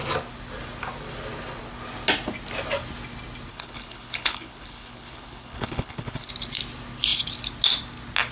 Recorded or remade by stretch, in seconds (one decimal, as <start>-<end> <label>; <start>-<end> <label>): 0.0-3.5 recorded; 3.5-6.3 remade; 6.3-8.3 recorded